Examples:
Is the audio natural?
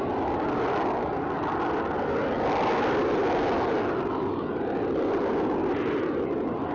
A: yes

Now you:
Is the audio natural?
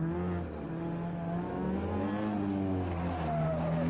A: yes